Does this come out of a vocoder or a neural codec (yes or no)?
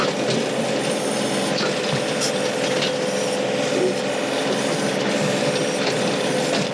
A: no